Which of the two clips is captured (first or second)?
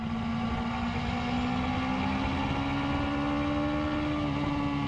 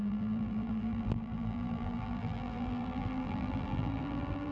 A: first